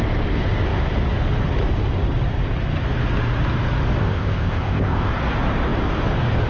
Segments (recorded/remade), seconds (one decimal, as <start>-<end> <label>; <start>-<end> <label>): 0.0-4.0 recorded; 4.0-5.1 remade; 5.1-6.5 recorded